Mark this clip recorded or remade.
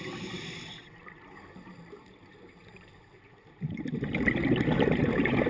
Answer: recorded